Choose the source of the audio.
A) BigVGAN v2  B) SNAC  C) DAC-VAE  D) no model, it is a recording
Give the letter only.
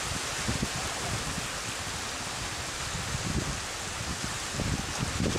D